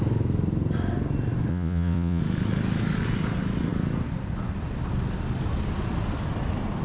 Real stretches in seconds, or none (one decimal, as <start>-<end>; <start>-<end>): 0.0-1.5; 2.2-6.8